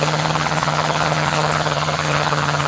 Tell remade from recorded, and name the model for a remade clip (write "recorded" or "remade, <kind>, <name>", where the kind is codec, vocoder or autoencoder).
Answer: remade, vocoder, HiFi-GAN